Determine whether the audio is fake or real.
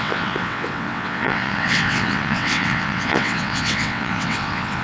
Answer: fake